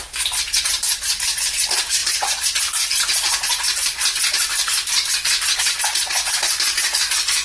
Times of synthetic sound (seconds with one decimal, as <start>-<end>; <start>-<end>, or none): none